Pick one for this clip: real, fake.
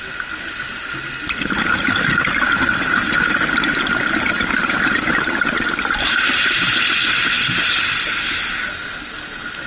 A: real